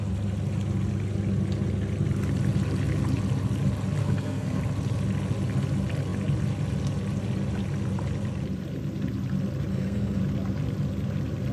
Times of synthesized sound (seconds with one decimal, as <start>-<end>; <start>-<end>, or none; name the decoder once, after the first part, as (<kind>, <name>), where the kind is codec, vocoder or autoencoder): 4.0-4.6 (codec, SNAC); 9.7-10.2